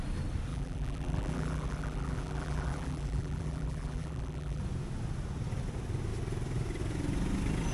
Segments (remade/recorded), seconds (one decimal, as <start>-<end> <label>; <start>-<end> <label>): 0.0-0.5 recorded; 0.5-4.6 remade; 4.6-7.7 recorded